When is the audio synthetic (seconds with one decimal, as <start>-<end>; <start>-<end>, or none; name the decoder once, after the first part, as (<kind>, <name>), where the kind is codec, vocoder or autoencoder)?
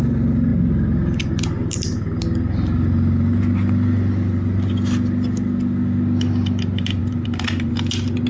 7.0-7.7 (vocoder, BigVGAN v2)